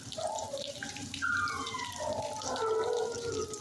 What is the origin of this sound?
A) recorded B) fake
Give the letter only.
B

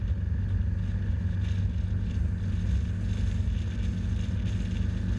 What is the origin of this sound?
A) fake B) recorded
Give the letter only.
B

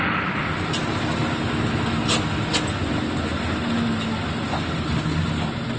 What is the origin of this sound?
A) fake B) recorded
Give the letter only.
B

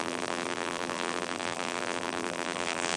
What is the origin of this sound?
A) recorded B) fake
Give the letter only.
B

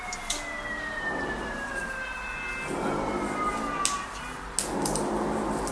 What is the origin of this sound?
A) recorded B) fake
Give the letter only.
A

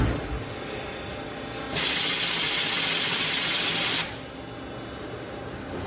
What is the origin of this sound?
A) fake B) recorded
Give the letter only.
B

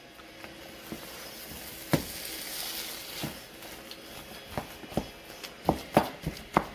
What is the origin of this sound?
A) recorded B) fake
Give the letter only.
A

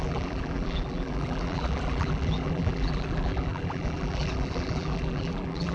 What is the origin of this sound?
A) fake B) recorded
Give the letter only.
A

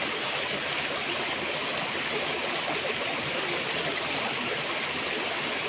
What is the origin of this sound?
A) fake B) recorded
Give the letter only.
B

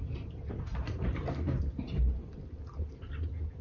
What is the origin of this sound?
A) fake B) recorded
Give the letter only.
A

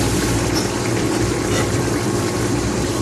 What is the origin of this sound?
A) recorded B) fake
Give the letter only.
B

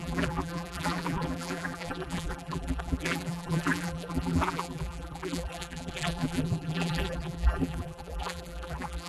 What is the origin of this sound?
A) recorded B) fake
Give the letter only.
B